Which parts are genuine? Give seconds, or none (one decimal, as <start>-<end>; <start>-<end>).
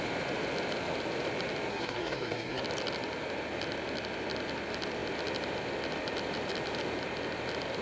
0.0-1.7; 2.6-7.8